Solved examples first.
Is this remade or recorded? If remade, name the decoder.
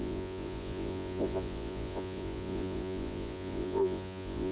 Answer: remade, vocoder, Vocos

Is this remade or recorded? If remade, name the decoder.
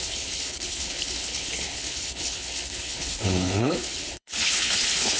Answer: remade, codec, HILCodec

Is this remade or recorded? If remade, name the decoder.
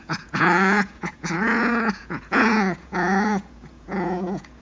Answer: remade, vocoder, Vocos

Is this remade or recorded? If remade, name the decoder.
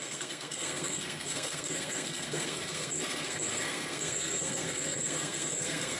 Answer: remade, codec, SNAC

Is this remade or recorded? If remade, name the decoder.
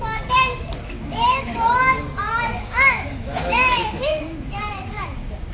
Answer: remade, codec, DAC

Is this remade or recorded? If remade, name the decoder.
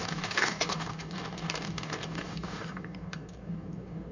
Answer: remade, codec, DAC